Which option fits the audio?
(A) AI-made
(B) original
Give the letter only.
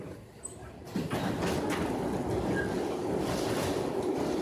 B